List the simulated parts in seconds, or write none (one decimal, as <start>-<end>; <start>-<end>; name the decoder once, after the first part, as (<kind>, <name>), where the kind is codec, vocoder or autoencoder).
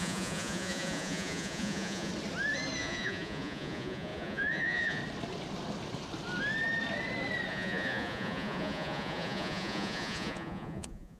0.0-2.1 (vocoder, Vocos); 2.8-5.0; 7.5-11.2